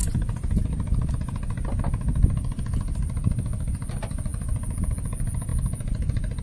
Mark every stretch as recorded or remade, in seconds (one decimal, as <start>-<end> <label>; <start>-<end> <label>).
0.0-6.4 recorded